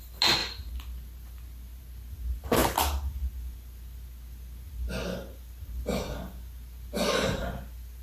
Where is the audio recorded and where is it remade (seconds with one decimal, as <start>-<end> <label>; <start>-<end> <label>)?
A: 0.0-8.0 recorded